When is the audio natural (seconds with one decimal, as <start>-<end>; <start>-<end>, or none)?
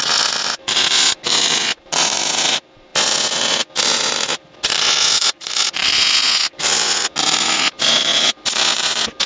0.0-9.3